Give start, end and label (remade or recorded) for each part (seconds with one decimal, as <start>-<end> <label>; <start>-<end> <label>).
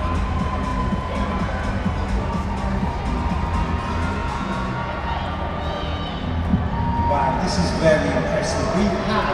0.0-0.7 recorded; 0.7-1.7 remade; 1.7-4.2 recorded; 4.2-6.0 remade; 6.0-9.3 recorded